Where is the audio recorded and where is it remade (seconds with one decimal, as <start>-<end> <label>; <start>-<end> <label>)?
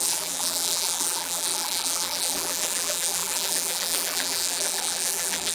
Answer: 0.0-5.5 remade